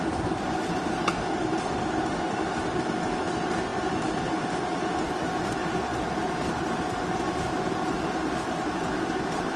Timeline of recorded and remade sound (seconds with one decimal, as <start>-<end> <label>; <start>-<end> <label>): 0.0-9.6 recorded